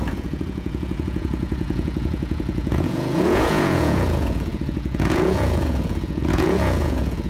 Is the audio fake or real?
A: fake